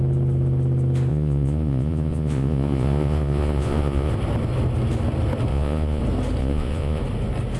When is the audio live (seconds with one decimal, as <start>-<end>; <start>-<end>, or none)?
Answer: 0.0-1.1; 4.1-5.5; 6.0-6.4; 7.0-7.6